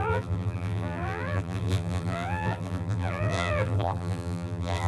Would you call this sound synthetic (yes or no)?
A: yes